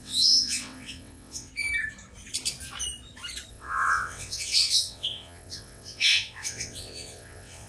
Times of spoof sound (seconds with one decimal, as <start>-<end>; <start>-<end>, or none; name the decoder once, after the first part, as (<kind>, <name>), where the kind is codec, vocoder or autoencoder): 0.0-1.5 (vocoder, WaveNeXt); 3.5-7.7